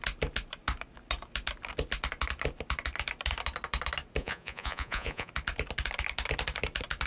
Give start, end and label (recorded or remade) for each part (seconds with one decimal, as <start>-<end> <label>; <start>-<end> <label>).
0.0-4.2 recorded; 4.2-5.3 remade; 5.3-7.1 recorded